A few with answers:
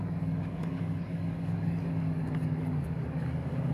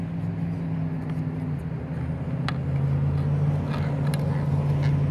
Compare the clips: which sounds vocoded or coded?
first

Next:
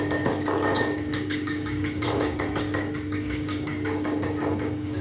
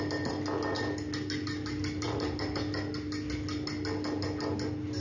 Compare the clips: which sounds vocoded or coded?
first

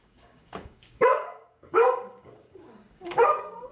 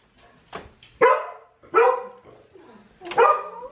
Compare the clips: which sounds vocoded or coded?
first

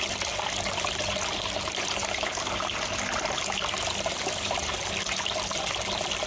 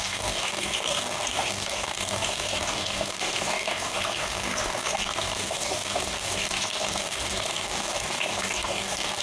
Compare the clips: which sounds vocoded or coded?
second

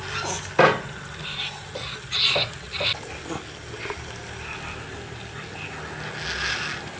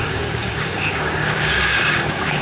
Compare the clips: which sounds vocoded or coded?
second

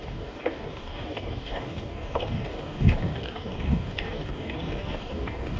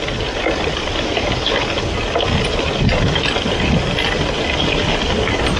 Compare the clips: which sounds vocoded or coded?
first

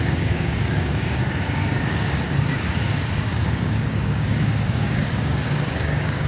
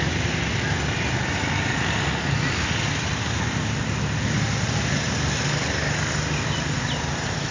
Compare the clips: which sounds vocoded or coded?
first